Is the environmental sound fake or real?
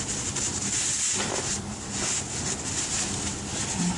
real